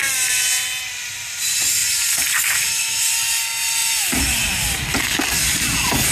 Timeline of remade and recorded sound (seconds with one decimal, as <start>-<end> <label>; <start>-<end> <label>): 0.0-6.1 recorded